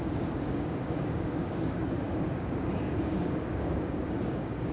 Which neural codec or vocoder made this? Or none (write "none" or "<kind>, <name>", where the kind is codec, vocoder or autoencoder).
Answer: codec, DAC